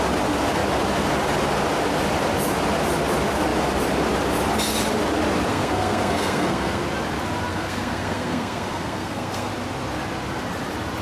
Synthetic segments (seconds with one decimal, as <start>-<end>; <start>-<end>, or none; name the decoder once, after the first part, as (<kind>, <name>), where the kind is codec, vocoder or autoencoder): 5.5-6.8 (codec, SNAC); 7.5-9.5